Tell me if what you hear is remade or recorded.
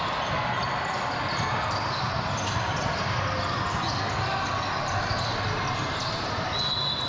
recorded